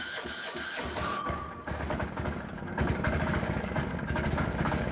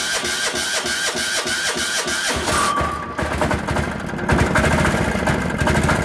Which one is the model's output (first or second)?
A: first